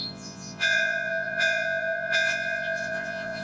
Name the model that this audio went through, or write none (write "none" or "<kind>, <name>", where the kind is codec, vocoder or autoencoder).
vocoder, Vocos